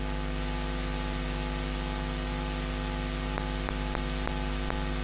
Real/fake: real